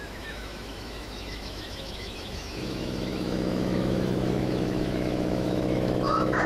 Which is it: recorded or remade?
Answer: remade